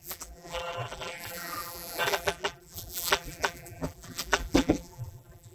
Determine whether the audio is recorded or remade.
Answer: remade